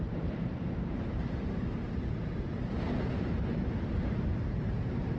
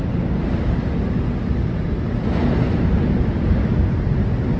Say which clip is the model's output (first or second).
first